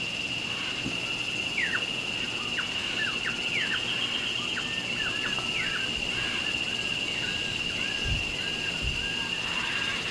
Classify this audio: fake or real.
real